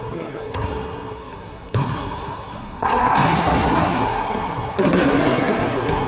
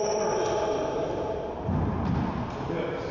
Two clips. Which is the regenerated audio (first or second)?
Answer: first